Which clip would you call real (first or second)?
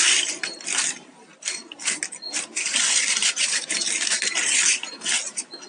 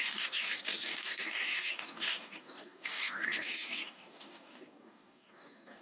first